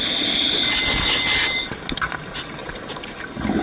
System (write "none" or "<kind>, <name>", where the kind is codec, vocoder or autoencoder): none